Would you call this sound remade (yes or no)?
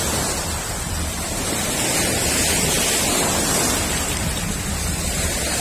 no